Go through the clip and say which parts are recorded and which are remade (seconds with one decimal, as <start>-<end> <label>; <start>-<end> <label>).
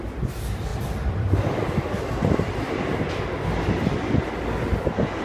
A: 0.0-0.7 recorded; 0.7-3.1 remade; 3.1-5.2 recorded